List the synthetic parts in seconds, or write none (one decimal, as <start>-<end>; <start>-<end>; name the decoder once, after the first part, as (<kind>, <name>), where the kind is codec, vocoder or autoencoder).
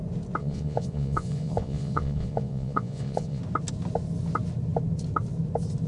0.4-3.4 (vocoder, Vocos)